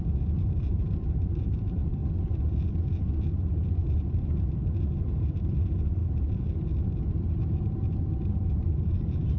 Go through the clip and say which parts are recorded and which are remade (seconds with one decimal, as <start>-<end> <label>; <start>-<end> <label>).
0.0-2.0 remade; 2.0-3.8 recorded; 3.8-4.6 remade; 4.6-5.2 recorded; 5.2-6.0 remade; 6.0-7.4 recorded; 7.4-9.4 remade

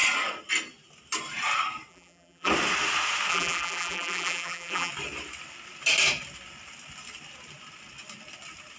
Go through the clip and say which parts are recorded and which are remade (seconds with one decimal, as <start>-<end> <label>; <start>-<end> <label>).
0.0-1.9 recorded; 1.9-2.5 remade; 2.5-3.3 recorded; 3.3-4.9 remade; 4.9-8.8 recorded

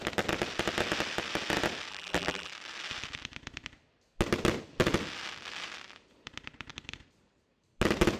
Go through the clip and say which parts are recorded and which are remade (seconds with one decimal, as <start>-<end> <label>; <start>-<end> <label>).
0.0-1.9 recorded; 1.9-2.5 remade; 2.5-8.2 recorded

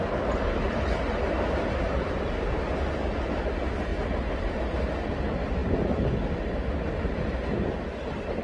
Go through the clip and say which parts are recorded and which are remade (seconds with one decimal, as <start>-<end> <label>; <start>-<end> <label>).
0.0-8.4 recorded

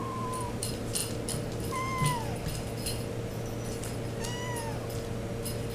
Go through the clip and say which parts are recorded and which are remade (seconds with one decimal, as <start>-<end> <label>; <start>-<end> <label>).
0.0-5.7 recorded